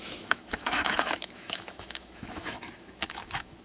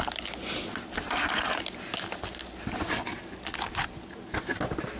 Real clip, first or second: second